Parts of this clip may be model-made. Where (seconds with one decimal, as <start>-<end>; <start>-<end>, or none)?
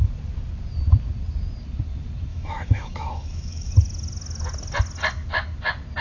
2.3-3.7